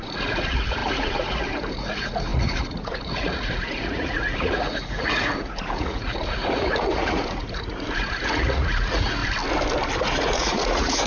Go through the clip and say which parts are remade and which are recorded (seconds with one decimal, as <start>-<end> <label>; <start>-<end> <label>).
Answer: 0.0-9.2 remade; 9.2-10.0 recorded; 10.0-11.1 remade